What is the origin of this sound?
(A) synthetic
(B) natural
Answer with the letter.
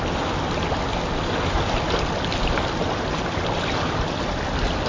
B